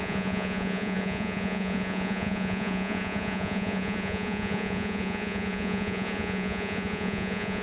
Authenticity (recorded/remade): remade